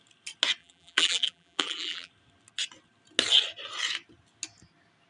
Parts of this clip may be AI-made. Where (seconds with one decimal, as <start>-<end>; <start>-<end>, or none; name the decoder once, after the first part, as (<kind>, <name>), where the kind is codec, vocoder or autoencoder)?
0.6-2.1 (vocoder, BigVGAN v2)